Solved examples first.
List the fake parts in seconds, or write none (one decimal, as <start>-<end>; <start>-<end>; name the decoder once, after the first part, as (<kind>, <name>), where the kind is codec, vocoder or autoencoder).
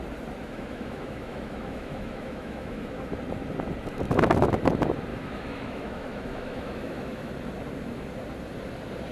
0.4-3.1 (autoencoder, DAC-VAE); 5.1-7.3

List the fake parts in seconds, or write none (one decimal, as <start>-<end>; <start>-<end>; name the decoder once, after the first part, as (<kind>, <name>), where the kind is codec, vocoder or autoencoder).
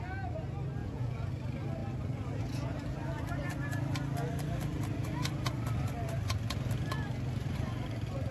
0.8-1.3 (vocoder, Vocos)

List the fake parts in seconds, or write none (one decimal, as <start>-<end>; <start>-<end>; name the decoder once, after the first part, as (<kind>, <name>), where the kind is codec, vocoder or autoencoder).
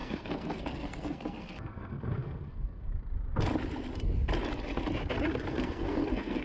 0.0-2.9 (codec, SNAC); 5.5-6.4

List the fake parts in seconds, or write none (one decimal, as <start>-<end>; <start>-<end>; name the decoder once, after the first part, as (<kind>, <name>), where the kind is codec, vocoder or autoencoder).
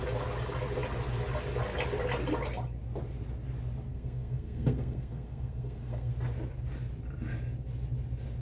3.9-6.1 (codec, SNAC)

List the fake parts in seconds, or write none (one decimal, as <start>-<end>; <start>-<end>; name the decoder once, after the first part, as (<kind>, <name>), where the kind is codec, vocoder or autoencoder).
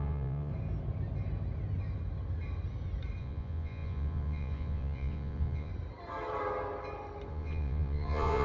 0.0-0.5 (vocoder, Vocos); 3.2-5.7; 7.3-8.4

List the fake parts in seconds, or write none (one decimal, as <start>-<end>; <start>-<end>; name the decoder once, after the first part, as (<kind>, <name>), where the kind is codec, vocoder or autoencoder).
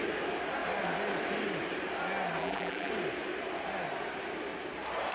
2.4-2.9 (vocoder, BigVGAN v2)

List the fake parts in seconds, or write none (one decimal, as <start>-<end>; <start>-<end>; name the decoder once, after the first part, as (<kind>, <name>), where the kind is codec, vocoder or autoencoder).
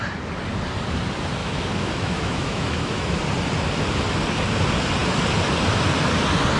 1.4-3.2 (autoencoder, DAC-VAE)